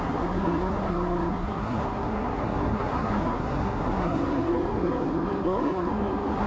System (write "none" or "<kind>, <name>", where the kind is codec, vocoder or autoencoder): codec, SNAC